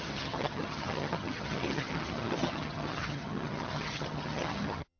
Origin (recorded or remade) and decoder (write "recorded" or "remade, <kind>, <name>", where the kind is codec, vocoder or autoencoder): remade, vocoder, HiFi-GAN